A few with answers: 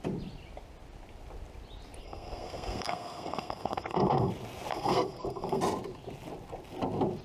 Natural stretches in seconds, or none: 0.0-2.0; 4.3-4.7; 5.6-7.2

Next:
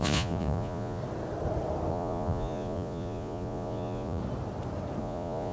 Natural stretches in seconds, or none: 1.0-1.9; 4.2-5.0

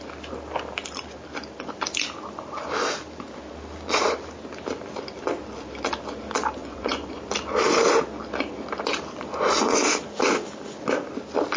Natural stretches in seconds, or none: 0.0-6.6; 7.2-11.6